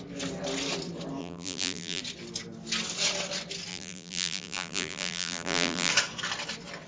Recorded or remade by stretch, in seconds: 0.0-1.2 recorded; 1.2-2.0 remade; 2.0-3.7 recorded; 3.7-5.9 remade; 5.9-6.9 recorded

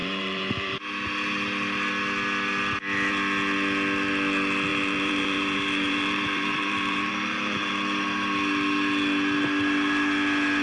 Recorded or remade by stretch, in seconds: 0.0-0.8 remade; 0.8-4.7 recorded; 4.7-7.7 remade; 7.7-10.6 recorded